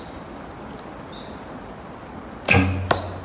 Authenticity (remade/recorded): recorded